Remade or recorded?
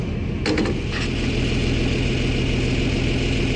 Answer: recorded